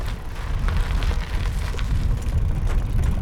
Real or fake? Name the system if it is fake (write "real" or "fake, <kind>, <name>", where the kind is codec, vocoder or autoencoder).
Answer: real